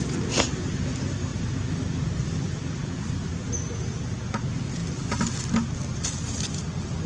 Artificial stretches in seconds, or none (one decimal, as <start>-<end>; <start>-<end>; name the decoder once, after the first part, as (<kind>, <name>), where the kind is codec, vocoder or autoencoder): none